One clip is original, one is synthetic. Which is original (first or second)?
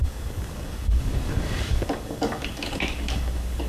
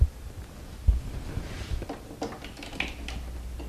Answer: second